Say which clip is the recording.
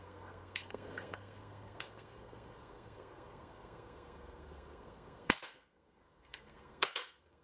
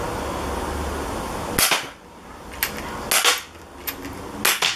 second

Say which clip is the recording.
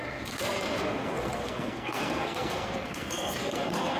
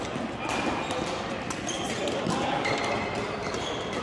second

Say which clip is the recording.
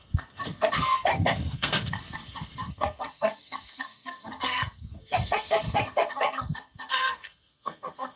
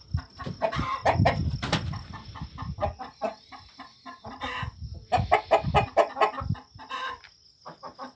second